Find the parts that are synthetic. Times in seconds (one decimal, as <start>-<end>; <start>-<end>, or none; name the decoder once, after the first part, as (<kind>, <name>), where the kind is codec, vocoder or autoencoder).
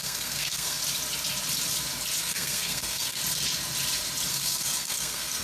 0.0-0.8 (codec, SNAC); 2.2-3.2; 4.3-5.4